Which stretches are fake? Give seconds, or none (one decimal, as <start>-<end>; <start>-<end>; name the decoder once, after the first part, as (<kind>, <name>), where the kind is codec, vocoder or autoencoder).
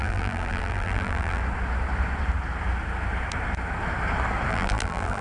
0.0-1.4 (vocoder, BigVGAN v2); 4.5-5.2